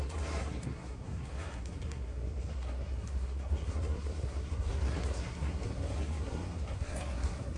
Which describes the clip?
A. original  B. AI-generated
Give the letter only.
B